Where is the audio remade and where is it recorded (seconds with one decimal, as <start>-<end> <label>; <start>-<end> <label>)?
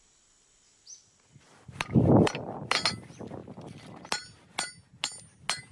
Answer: 0.0-5.7 recorded